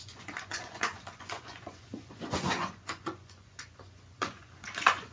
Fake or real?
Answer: fake